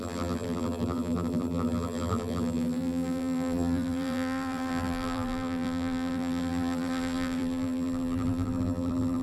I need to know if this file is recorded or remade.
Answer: remade